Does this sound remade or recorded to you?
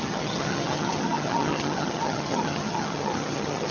remade